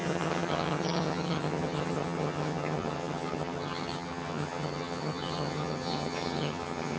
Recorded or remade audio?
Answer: remade